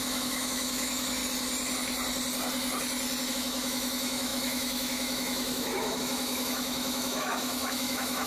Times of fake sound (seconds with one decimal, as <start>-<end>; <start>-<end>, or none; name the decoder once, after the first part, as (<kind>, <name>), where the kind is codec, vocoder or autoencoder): 0.0-1.2 (autoencoder, DAC-VAE); 3.3-8.3